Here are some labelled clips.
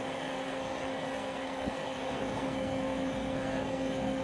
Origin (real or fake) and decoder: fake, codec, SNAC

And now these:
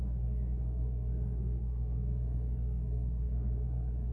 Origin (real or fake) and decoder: fake, codec, SNAC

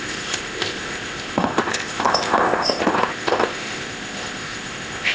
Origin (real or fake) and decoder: fake, codec, ZipCodec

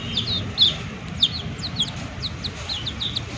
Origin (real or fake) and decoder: real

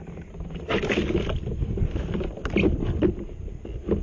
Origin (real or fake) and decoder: real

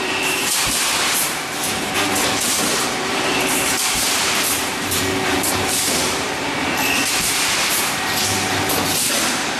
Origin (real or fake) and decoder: fake, vocoder, BigVGAN v2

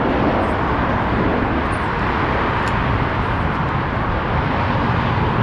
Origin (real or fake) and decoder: real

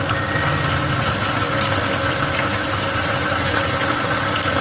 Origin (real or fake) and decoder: real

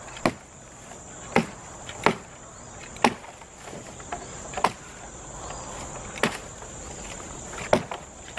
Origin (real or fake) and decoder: real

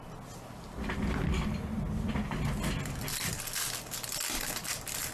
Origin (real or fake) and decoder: real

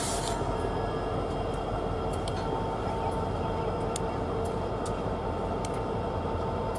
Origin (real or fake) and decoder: real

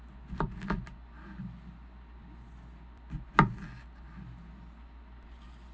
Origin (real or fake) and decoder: real